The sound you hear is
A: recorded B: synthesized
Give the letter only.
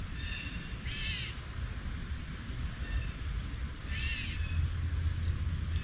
A